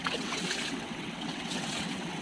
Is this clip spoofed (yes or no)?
yes